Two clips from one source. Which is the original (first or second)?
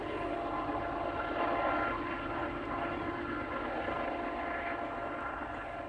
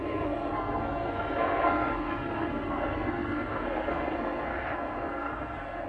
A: first